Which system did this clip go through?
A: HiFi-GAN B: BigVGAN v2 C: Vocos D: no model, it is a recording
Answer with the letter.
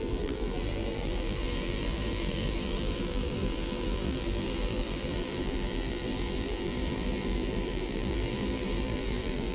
B